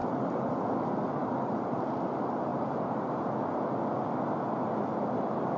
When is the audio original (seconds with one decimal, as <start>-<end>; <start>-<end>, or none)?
0.5-2.5; 3.3-5.6